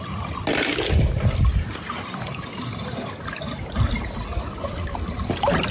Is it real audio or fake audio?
real